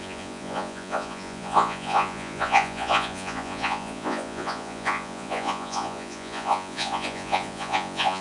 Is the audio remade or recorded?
remade